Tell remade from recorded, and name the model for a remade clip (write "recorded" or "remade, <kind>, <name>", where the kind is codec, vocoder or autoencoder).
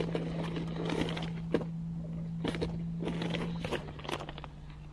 recorded